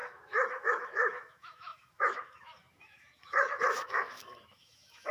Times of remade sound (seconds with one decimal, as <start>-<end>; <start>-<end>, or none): 0.0-5.1